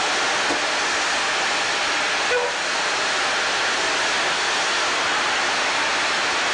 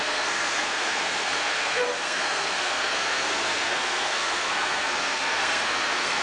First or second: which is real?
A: first